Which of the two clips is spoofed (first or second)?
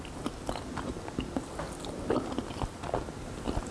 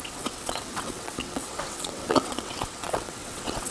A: second